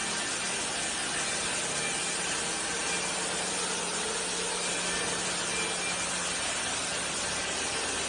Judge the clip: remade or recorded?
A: recorded